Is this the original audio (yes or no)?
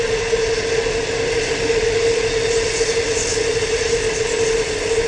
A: yes